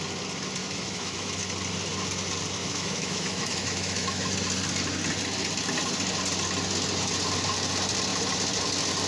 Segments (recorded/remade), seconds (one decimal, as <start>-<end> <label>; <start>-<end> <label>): 0.0-0.6 recorded; 0.6-1.4 remade; 1.4-2.6 recorded; 2.6-4.3 remade; 4.3-9.1 recorded